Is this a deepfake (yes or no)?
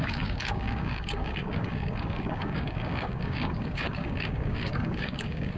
yes